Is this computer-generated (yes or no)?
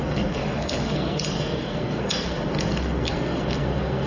yes